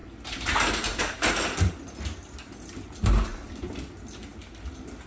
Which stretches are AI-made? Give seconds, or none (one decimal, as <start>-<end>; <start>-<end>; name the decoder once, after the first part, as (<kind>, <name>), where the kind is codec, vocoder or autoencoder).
none